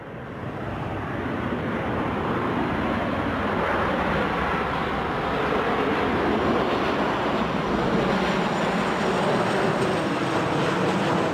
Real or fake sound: real